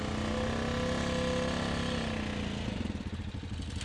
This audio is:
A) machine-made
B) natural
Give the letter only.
B